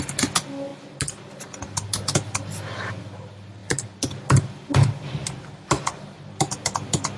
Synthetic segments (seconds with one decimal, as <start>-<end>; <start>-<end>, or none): none